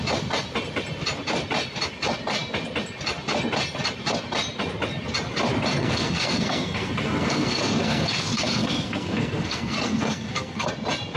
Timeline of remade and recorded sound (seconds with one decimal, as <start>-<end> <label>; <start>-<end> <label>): 0.0-5.8 recorded; 5.8-10.7 remade; 10.7-11.2 recorded